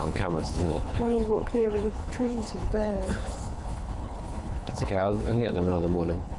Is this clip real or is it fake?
fake